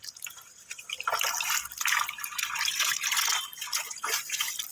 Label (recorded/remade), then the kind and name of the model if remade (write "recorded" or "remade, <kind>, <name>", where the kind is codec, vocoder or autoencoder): recorded